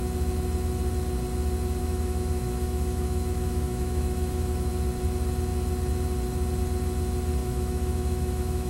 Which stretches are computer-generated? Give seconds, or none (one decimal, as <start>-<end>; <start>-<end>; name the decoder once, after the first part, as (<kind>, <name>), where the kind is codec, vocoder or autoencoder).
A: 1.8-4.7 (autoencoder, DAC-VAE); 7.4-8.7